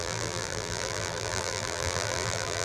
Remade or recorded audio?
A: remade